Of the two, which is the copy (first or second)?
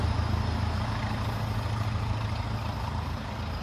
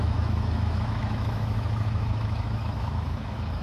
second